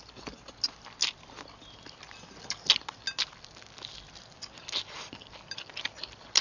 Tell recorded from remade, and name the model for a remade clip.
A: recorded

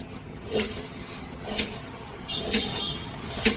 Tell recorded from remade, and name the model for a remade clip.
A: remade, vocoder, HiFi-GAN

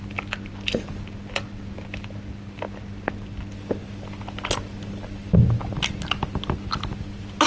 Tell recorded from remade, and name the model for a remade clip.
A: recorded